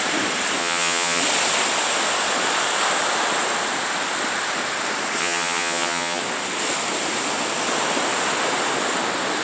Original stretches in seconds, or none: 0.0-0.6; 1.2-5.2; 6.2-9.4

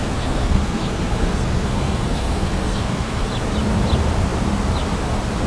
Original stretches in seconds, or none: 3.3-5.5